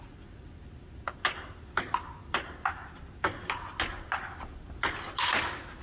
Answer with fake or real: real